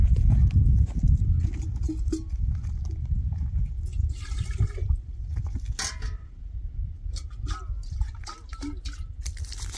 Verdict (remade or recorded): recorded